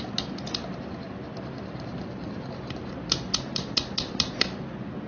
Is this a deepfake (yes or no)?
no